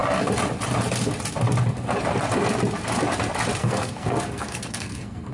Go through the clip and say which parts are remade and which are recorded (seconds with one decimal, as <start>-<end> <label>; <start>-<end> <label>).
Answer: 0.0-3.6 recorded; 3.6-5.3 remade